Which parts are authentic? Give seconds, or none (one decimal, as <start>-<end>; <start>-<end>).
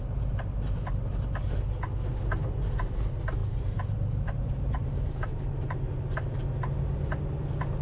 0.0-3.4; 5.8-7.8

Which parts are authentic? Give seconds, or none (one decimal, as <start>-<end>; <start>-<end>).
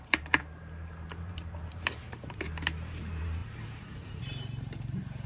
none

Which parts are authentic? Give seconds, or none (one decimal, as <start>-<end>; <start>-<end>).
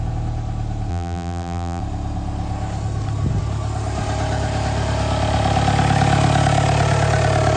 0.0-0.9; 1.8-7.6